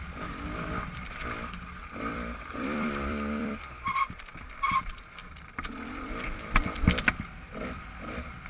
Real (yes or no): no